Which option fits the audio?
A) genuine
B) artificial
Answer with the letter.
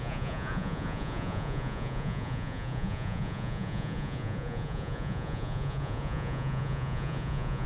B